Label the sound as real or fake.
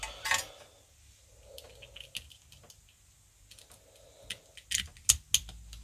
real